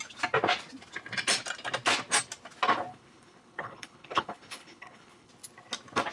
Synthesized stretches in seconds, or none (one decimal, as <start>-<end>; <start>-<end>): 2.9-5.3